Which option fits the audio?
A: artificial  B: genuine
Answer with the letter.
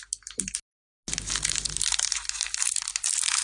B